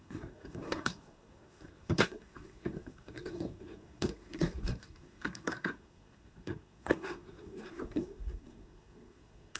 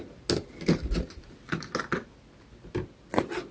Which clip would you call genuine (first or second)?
second